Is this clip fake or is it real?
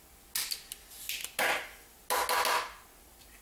real